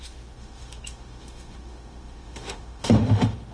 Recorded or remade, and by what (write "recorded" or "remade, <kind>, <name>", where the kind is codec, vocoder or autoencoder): remade, autoencoder, DAC-VAE